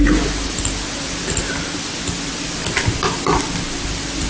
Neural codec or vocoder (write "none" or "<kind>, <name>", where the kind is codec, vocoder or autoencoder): none